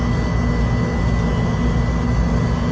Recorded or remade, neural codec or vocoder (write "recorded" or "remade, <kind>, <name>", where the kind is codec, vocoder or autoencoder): recorded